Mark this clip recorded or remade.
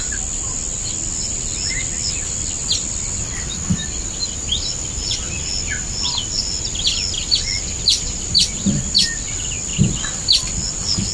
recorded